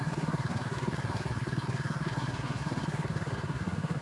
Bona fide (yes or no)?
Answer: no